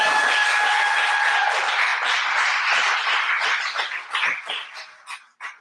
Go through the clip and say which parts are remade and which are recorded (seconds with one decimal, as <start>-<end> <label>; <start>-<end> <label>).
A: 0.0-5.6 recorded